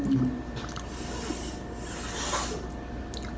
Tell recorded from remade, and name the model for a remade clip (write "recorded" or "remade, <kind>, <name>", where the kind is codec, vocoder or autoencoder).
recorded